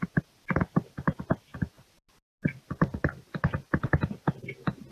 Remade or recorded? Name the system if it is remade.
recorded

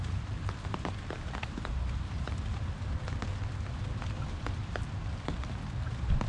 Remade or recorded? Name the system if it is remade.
remade, vocoder, BigVGAN v2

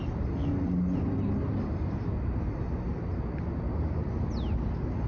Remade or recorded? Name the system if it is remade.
recorded